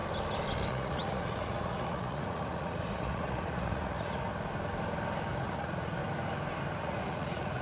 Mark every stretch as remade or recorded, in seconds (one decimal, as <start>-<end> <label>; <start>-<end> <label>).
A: 0.0-0.7 recorded; 0.7-4.3 remade; 4.3-5.3 recorded; 5.3-6.0 remade; 6.0-6.8 recorded; 6.8-7.6 remade